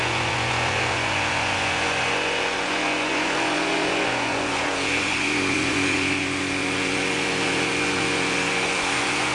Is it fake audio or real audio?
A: fake